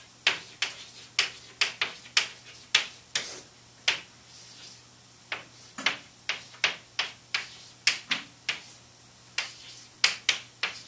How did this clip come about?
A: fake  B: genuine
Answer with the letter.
B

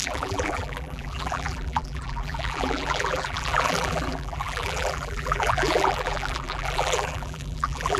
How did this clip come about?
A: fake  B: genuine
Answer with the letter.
A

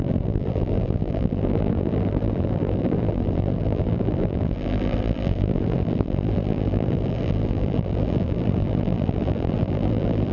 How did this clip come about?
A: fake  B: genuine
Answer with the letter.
A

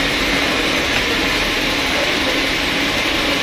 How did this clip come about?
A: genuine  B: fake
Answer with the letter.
B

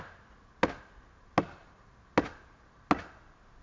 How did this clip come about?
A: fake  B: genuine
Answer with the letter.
B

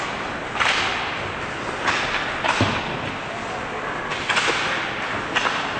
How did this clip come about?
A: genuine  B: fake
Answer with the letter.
A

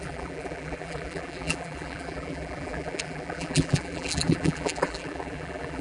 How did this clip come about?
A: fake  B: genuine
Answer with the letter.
A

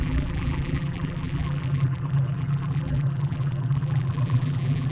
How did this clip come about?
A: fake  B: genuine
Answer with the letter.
A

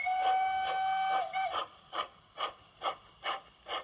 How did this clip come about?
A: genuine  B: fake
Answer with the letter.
A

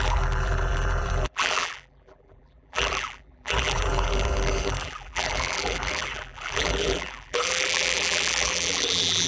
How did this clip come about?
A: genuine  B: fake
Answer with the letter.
B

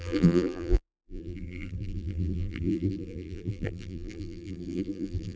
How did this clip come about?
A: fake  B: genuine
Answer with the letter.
A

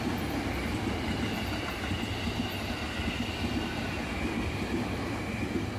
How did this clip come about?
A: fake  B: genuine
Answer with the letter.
B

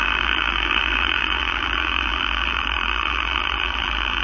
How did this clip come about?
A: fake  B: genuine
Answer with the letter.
A